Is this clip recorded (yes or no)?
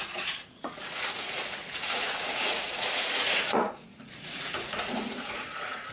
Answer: no